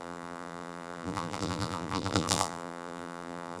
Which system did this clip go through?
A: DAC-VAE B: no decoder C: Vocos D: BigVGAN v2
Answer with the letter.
D